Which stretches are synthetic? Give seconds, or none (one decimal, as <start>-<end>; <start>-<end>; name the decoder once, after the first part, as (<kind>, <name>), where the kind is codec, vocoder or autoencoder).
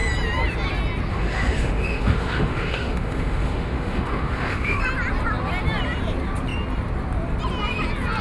1.1-4.8 (autoencoder, DAC-VAE)